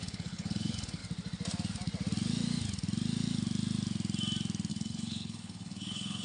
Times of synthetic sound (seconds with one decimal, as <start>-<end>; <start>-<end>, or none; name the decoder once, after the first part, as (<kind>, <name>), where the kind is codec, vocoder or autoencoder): 0.0-1.0 (codec, HILCodec); 4.7-6.2